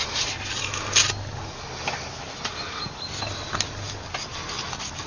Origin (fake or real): real